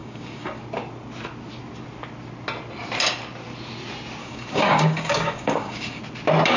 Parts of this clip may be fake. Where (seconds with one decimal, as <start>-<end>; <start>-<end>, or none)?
0.0-0.6; 4.2-6.0